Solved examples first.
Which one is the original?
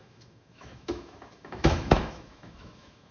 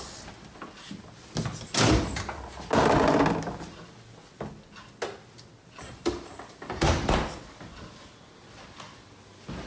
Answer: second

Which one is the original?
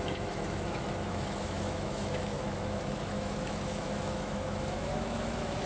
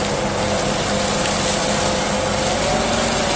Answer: second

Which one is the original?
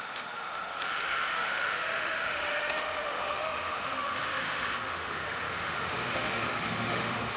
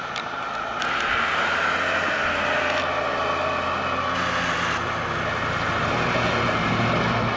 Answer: second